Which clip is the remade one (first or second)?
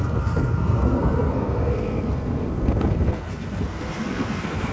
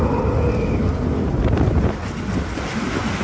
first